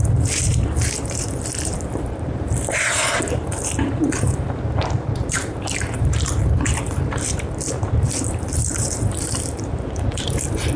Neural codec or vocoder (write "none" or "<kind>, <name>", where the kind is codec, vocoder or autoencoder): vocoder, BigVGAN v2